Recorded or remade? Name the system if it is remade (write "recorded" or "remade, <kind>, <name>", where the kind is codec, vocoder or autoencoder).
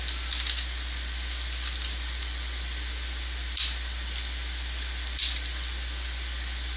recorded